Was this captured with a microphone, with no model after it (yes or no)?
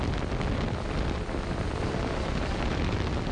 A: yes